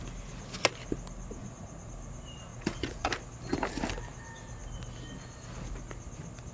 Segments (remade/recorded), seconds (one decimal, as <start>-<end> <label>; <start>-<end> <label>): 0.0-1.4 recorded; 1.4-1.9 remade; 1.9-2.5 recorded; 2.5-3.1 remade; 3.1-6.5 recorded

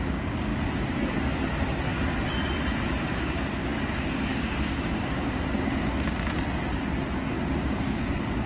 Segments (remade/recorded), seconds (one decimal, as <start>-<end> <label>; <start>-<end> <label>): 0.0-0.5 remade; 0.5-3.0 recorded; 3.0-6.1 remade; 6.1-7.3 recorded; 7.3-8.5 remade

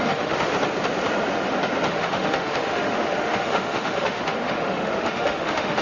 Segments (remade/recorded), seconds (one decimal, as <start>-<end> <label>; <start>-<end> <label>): 0.0-0.5 remade; 0.5-1.9 recorded; 1.9-5.8 remade